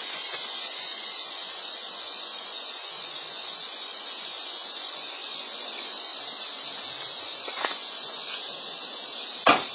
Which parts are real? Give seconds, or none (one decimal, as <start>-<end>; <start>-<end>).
6.1-7.2; 8.8-9.7